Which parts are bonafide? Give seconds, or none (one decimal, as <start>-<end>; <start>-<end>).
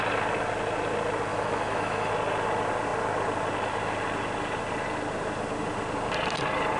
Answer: 0.0-1.3; 2.1-6.8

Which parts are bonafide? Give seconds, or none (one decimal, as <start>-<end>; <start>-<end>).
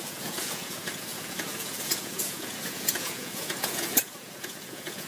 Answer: none